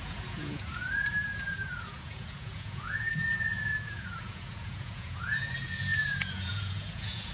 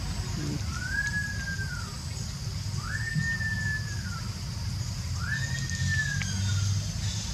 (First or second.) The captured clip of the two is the second